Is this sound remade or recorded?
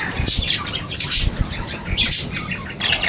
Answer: remade